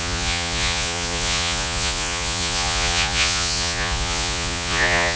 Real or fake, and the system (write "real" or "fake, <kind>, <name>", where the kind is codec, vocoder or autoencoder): fake, vocoder, Vocos